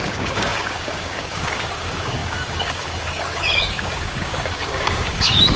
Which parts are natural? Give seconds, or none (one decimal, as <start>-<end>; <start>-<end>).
none